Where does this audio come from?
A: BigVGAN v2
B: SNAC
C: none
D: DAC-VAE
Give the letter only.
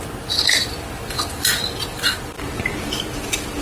A